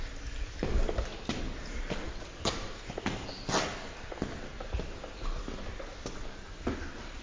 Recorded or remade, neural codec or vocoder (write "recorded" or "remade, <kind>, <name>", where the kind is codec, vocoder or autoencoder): recorded